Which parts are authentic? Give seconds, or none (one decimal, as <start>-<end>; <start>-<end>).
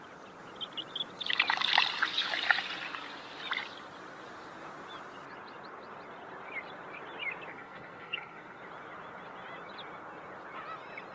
0.0-7.5; 8.6-11.1